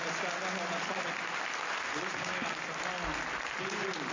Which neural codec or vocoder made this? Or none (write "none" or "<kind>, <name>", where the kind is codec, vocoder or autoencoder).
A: none